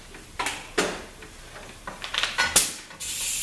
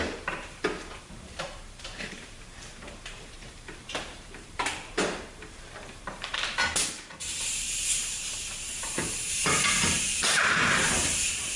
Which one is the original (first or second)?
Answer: first